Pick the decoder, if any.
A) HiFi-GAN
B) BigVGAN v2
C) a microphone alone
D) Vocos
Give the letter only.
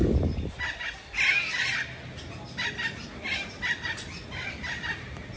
C